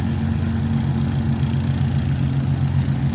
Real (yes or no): yes